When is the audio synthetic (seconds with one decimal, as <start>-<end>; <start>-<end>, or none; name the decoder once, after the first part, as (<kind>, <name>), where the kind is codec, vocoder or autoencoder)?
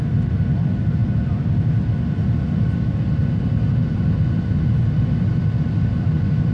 none